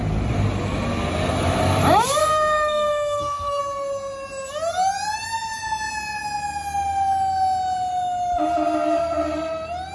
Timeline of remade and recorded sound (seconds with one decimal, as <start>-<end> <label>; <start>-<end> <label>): 0.0-2.2 recorded; 2.2-3.6 remade; 3.6-9.9 recorded